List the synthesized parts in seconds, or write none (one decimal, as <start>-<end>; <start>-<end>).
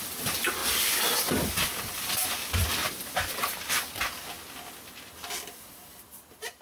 0.0-2.6; 5.7-6.6